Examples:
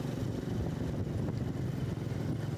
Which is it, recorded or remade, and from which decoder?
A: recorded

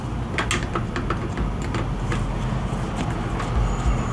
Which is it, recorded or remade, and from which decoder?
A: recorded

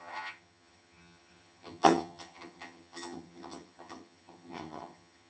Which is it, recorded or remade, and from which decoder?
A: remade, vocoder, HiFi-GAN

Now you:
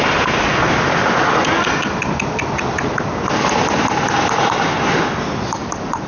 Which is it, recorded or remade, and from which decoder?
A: recorded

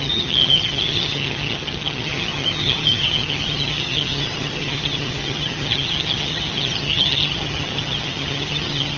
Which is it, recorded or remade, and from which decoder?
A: remade, vocoder, HiFi-GAN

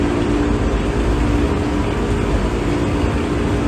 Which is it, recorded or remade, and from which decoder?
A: recorded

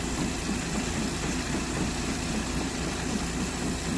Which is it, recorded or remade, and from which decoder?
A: recorded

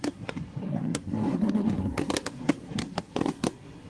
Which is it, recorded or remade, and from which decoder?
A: remade, codec, SNAC